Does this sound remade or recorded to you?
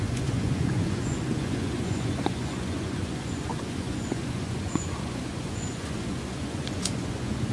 remade